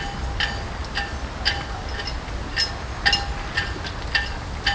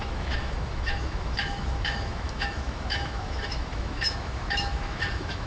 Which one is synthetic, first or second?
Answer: second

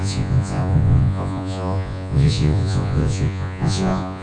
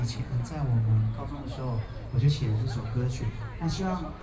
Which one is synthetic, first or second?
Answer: first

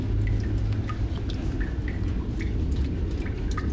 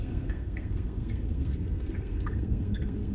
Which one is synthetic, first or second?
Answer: second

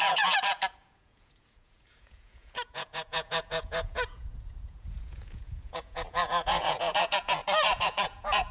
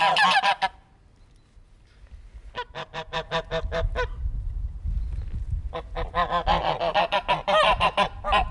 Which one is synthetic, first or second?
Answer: first